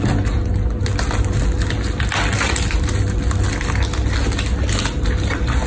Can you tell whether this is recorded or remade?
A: recorded